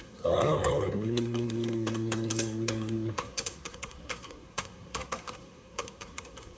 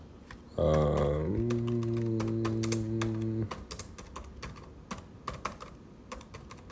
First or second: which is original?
second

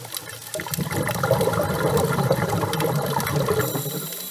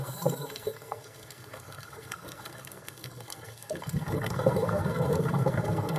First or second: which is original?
first